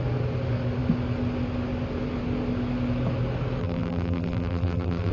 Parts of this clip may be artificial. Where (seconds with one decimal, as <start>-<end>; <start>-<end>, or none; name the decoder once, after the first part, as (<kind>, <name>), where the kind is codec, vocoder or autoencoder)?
3.6-5.1 (vocoder, BigVGAN v2)